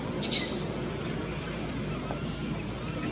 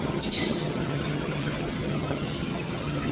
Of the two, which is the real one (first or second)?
first